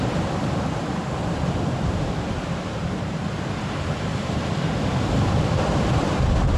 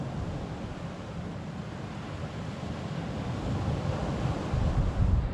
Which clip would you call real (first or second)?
second